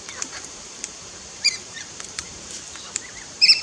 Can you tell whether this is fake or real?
fake